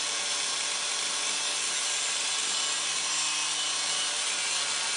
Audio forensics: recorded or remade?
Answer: recorded